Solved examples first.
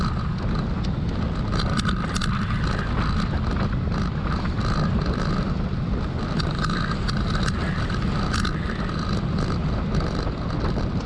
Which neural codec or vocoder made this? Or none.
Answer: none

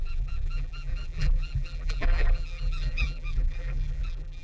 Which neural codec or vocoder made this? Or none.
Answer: vocoder, BigVGAN v2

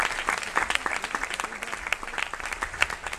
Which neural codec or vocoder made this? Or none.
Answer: none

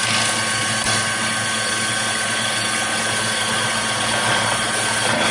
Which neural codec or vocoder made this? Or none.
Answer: none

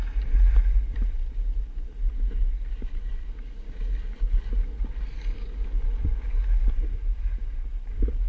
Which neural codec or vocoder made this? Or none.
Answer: none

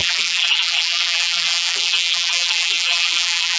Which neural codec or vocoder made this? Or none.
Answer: vocoder, BigVGAN v2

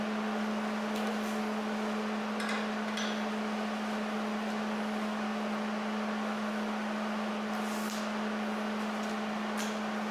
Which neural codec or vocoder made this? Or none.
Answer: none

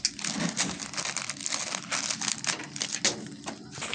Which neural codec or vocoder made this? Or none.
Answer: none